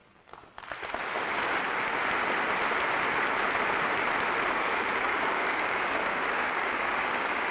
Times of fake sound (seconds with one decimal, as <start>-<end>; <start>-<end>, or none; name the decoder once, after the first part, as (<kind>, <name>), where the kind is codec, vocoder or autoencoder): 4.5-7.5 (codec, DAC)